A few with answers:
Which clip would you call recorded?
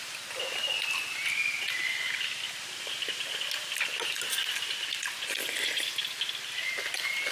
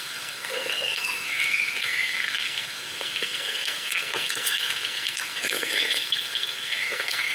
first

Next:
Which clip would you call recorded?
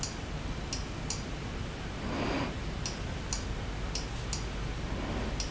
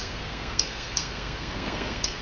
first